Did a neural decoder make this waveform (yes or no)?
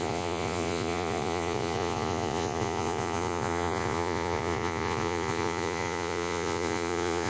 yes